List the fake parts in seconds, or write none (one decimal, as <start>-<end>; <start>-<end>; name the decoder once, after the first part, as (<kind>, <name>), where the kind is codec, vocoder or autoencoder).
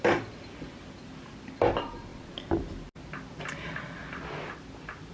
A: none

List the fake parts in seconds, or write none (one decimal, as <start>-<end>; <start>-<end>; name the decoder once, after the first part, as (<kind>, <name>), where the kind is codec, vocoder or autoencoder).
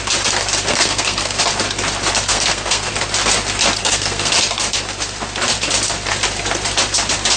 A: 0.7-1.4 (codec, SNAC); 2.3-2.9; 3.8-4.3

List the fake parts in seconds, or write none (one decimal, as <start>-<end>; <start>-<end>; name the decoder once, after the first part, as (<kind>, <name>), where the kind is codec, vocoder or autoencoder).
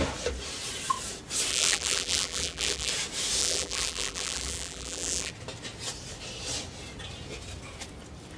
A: 1.5-2.9 (vocoder, BigVGAN v2); 3.4-5.3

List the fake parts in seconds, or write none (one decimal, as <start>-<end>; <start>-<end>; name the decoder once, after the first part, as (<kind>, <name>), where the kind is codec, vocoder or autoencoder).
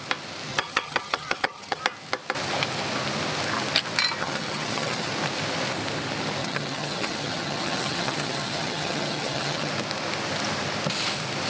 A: 0.5-1.8 (vocoder, HiFi-GAN); 4.2-5.1; 6.4-9.7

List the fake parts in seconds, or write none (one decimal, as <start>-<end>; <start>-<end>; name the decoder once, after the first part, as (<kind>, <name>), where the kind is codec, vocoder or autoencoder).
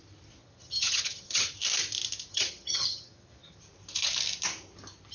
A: 0.4-1.5 (vocoder, HiFi-GAN); 2.3-3.6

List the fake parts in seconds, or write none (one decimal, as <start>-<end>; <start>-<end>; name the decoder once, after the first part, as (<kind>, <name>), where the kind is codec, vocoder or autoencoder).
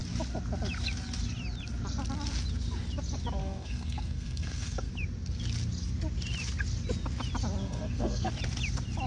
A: 3.4-4.9 (codec, SNAC); 7.6-8.3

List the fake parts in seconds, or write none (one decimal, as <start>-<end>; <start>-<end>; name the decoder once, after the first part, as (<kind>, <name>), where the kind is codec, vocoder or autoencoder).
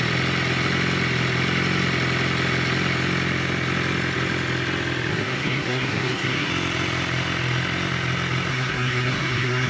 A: 5.1-6.5 (codec, SNAC); 8.5-9.7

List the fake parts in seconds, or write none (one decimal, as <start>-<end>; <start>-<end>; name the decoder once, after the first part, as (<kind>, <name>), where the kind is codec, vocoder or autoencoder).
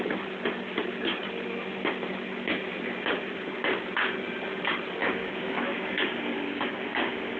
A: 5.0-7.4 (codec, DAC)